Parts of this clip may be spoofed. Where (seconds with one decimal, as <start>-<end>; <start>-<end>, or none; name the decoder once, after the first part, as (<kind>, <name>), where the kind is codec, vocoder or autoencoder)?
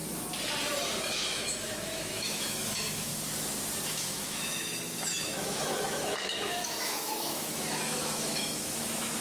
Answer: 1.1-3.1 (autoencoder, DAC-VAE); 3.9-9.2